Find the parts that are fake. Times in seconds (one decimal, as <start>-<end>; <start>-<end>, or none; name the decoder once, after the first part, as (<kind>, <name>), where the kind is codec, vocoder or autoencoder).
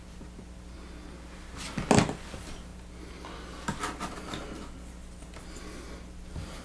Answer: none